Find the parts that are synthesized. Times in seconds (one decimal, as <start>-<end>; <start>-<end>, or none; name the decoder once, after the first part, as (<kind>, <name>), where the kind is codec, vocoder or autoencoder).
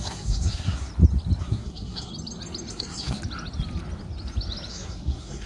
0.0-0.9 (codec, SNAC); 1.4-2.1; 2.7-3.2; 4.7-5.5